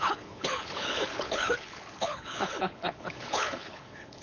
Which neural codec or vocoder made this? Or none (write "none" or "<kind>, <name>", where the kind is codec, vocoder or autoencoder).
codec, HILCodec